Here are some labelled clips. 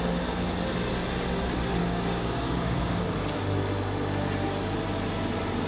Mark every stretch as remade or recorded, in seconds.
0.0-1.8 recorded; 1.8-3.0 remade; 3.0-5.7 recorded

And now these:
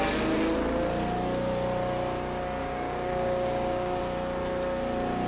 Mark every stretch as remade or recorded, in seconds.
0.0-2.6 recorded; 2.6-4.0 remade; 4.0-5.3 recorded

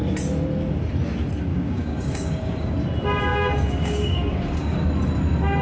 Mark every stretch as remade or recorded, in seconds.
0.0-1.5 recorded; 1.5-2.7 remade; 2.7-3.3 recorded; 3.3-4.9 remade; 4.9-5.6 recorded

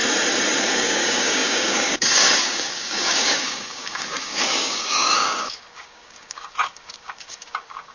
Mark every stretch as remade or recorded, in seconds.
0.0-0.6 recorded; 0.6-7.9 remade

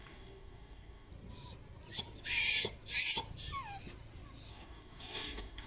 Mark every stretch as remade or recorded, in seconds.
0.0-1.1 remade; 1.1-4.5 recorded; 4.5-5.7 remade

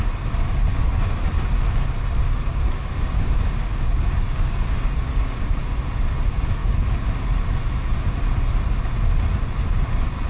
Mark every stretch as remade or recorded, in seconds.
0.0-2.2 recorded; 2.2-5.4 remade; 5.4-10.3 recorded

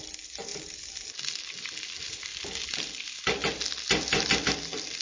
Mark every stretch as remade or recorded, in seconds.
0.0-5.0 recorded

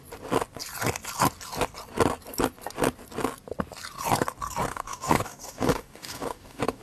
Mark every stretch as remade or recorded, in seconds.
0.0-4.7 recorded; 4.7-6.8 remade